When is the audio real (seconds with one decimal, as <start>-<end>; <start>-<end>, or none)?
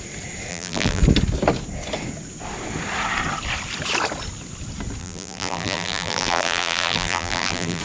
0.0-0.5; 1.0-5.0